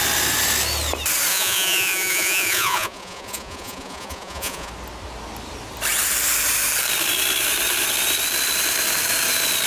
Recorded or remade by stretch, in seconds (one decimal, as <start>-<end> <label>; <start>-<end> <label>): 0.0-1.3 recorded; 1.3-4.7 remade; 4.7-9.7 recorded

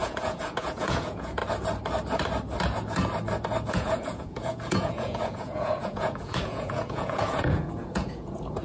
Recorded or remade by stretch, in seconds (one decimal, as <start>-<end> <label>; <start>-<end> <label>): 0.0-1.4 remade; 1.4-3.7 recorded; 3.7-8.6 remade

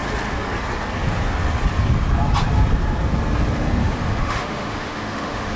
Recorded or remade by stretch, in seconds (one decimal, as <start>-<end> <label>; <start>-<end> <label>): 0.0-3.8 recorded; 3.8-5.6 remade

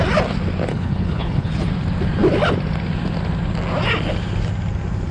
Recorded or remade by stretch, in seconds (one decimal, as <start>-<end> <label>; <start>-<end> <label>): 0.0-0.7 recorded; 0.7-1.5 remade; 1.5-5.1 recorded

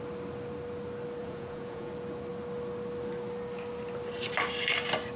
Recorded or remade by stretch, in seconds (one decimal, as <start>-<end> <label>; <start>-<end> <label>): 0.0-1.2 recorded; 1.2-1.9 remade; 1.9-5.2 recorded

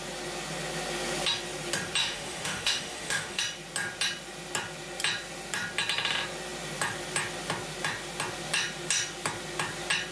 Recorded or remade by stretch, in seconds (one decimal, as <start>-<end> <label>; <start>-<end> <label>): 0.0-2.0 recorded; 2.0-3.4 remade; 3.4-10.1 recorded

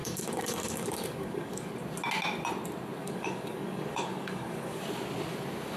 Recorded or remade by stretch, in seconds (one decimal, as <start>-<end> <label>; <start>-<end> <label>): 0.0-1.7 remade; 1.7-3.0 recorded; 3.0-4.8 remade; 4.8-5.8 recorded